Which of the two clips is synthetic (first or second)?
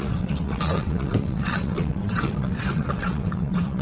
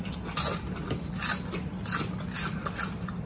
first